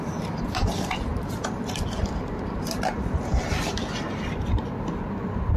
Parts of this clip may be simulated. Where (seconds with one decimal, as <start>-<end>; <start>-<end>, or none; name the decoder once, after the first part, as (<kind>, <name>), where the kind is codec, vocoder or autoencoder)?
0.0-1.1 (vocoder, BigVGAN v2); 1.9-3.3